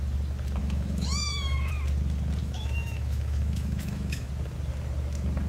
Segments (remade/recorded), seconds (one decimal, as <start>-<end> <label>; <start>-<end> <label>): 0.0-0.6 recorded; 0.6-1.7 remade; 1.7-2.4 recorded; 2.4-4.3 remade; 4.3-5.5 recorded